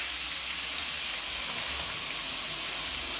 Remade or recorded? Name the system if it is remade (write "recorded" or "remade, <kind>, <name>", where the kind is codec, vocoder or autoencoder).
recorded